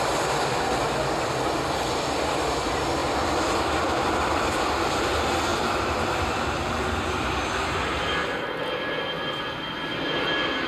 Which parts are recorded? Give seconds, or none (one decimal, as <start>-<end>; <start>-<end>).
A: 0.0-3.0; 4.8-5.5; 6.5-10.7